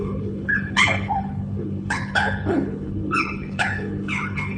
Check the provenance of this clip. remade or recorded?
remade